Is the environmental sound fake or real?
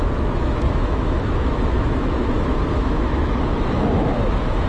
fake